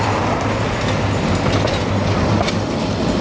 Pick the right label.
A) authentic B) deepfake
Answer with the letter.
A